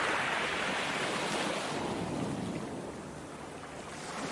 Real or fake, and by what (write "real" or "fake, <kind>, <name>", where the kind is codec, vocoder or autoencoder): real